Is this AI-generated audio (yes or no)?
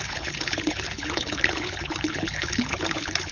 yes